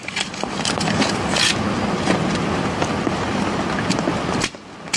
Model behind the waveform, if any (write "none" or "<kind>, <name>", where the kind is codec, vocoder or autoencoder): none